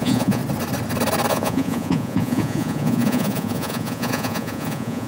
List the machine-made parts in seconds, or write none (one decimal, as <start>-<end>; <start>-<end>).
0.0-0.4; 1.3-5.1

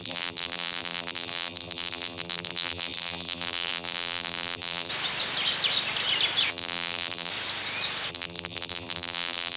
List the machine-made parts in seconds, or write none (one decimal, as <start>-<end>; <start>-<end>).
0.0-4.9; 6.5-7.3; 8.1-9.6